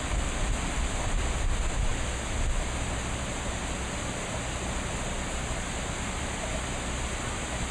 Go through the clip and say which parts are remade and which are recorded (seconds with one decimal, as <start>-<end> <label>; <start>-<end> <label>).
0.0-7.7 recorded